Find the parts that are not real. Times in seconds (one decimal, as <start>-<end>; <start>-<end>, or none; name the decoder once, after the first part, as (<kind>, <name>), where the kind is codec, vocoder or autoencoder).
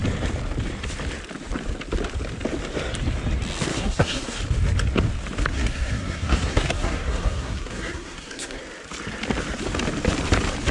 3.7-4.4 (codec, SNAC); 5.5-8.6